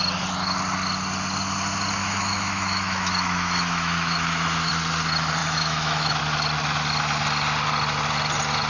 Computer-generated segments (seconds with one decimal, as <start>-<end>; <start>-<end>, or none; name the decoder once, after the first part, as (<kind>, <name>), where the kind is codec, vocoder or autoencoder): 2.0-4.7 (autoencoder, DAC-VAE); 5.4-6.2